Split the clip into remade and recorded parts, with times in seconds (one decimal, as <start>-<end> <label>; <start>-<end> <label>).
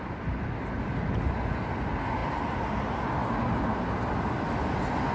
0.0-5.1 recorded